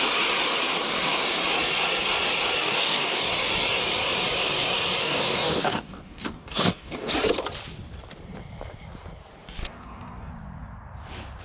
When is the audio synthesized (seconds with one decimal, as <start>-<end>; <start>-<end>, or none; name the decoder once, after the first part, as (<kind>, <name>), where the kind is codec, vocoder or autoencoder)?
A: 2.6-3.2 (codec, DAC); 5.0-7.1; 9.6-10.3